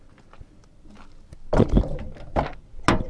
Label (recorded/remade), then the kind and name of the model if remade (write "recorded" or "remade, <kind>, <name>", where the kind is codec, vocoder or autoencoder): recorded